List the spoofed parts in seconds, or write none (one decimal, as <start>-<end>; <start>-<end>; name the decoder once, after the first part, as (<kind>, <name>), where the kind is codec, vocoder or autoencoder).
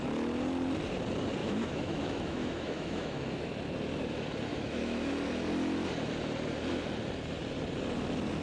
1.4-3.5 (autoencoder, DAC-VAE); 4.5-5.1